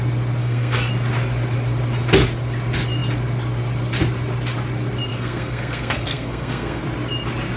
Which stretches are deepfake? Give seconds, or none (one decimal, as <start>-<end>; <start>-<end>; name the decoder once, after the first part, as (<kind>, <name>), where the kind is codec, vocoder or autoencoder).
0.4-0.9 (codec, SNAC); 5.1-6.8